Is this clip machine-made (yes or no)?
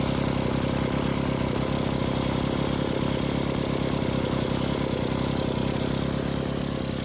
no